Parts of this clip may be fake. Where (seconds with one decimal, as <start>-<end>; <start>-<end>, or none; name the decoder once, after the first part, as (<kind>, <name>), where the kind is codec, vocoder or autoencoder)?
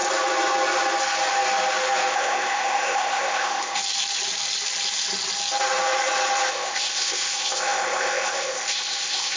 2.1-3.8 (codec, ZipCodec); 6.5-9.4